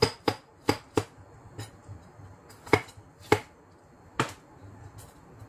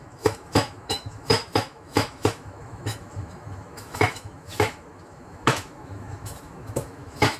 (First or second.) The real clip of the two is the first